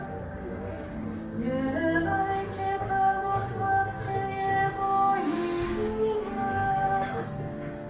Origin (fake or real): fake